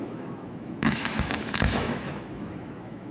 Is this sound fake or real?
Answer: fake